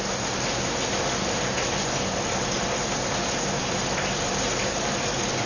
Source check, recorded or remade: recorded